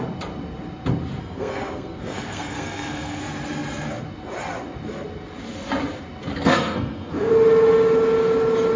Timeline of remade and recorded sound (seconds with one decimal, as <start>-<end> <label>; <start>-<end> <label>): 0.0-1.2 recorded; 1.2-3.2 remade; 3.2-6.3 recorded; 6.3-7.3 remade; 7.3-8.8 recorded

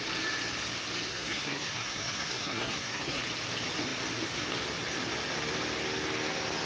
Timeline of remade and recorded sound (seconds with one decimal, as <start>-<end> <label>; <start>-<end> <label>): 0.0-1.1 recorded; 1.1-3.2 remade; 3.2-6.7 recorded